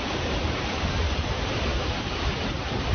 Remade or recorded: remade